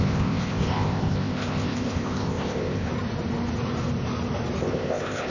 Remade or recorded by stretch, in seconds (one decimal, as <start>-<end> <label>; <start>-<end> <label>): 0.0-2.9 remade; 2.9-4.6 recorded; 4.6-5.3 remade